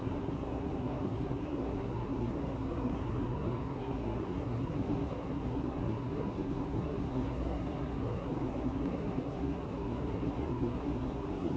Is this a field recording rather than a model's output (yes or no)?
no